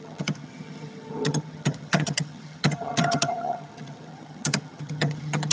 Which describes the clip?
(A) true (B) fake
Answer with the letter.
B